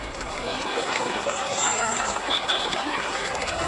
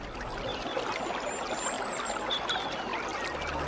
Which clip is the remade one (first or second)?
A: first